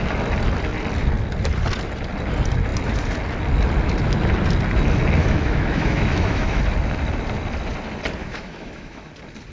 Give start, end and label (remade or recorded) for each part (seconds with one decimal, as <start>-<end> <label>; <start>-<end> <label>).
0.0-5.2 recorded; 5.2-6.6 remade; 6.6-8.2 recorded; 8.2-9.1 remade; 9.1-9.5 recorded